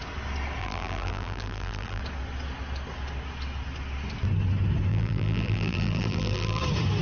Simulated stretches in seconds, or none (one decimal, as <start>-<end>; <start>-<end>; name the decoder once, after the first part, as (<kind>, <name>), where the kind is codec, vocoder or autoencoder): 0.6-2.0 (vocoder, BigVGAN v2); 4.9-6.6

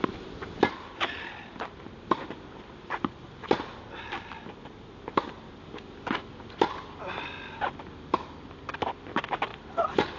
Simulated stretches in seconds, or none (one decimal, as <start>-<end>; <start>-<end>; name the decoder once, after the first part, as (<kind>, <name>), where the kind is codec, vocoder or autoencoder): 0.0-3.7 (vocoder, BigVGAN v2); 6.4-9.5